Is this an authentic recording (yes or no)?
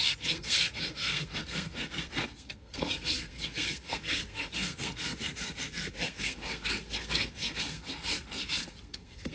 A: no